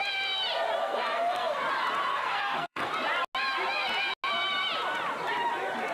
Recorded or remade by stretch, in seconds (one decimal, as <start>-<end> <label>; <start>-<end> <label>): 0.0-0.8 recorded; 0.8-1.6 remade; 1.6-2.1 recorded; 2.1-2.9 remade; 2.9-5.9 recorded